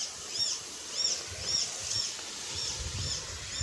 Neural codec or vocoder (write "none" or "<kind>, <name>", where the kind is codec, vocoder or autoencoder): none